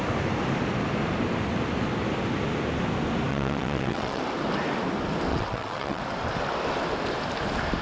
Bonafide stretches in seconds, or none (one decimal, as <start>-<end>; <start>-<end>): 0.0-3.3; 4.2-5.3; 6.0-7.8